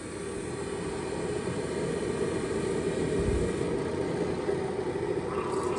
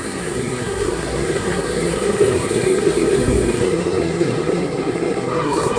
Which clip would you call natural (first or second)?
first